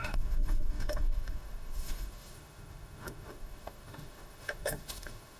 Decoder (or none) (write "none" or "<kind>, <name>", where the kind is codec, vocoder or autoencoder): autoencoder, DAC-VAE